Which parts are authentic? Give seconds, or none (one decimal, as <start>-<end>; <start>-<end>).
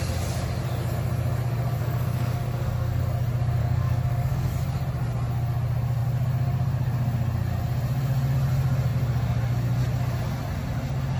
0.0-1.8; 3.0-3.6; 4.5-11.2